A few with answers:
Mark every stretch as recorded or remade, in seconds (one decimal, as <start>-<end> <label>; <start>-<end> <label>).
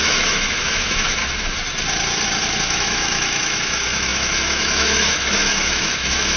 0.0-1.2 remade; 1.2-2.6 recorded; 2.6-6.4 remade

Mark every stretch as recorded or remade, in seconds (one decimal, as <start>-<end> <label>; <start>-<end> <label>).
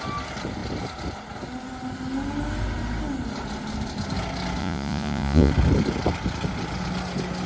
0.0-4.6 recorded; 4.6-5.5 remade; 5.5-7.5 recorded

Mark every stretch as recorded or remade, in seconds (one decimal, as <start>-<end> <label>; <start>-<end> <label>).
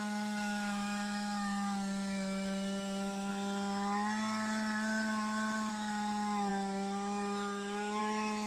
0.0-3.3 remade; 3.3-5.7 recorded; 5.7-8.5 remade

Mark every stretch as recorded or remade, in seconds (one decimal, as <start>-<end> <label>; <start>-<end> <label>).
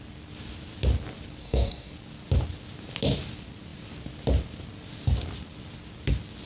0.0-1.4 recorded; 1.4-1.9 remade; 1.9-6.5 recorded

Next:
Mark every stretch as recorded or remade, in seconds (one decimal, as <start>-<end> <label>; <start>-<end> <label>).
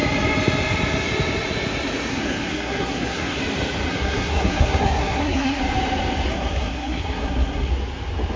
0.0-2.1 recorded; 2.1-3.4 remade; 3.4-3.9 recorded; 3.9-5.6 remade; 5.6-6.3 recorded; 6.3-7.7 remade; 7.7-8.4 recorded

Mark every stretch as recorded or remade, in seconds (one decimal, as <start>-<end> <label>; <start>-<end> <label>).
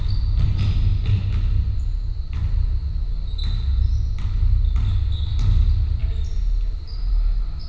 0.0-7.7 recorded